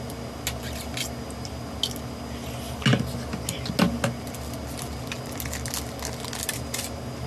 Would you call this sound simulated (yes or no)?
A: no